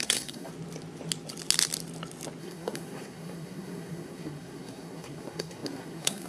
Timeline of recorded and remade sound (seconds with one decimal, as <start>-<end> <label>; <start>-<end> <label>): 0.0-0.5 remade; 0.5-2.4 recorded; 2.4-6.3 remade